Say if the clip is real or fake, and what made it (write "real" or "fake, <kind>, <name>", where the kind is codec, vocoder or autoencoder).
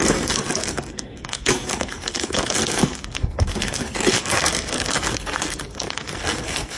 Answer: fake, codec, SNAC